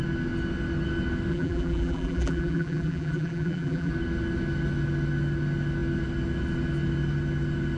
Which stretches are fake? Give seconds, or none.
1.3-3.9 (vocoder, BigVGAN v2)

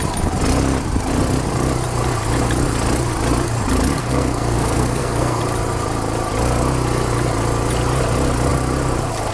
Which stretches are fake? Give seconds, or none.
4.0-5.4 (codec, SNAC)

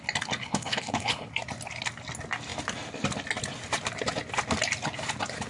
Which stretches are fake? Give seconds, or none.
0.4-1.3 (codec, HILCodec)

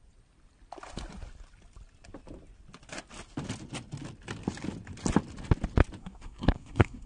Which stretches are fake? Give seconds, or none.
6.0-7.1 (codec, SNAC)

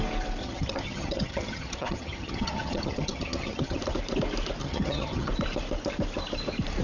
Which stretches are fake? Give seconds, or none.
0.4-3.8 (vocoder, HiFi-GAN); 4.6-5.3